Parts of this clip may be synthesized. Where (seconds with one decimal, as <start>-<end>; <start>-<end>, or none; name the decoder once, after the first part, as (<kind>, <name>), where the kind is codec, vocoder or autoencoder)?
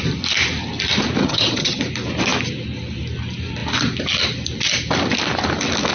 1.2-1.8 (vocoder, HiFi-GAN)